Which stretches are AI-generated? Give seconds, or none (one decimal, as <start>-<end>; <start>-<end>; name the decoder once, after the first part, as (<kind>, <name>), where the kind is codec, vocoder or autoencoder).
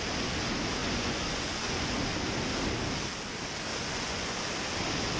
0.8-2.0 (vocoder, Vocos); 3.7-4.4